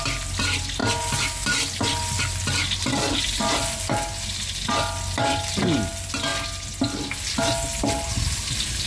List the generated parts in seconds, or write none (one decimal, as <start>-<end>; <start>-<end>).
none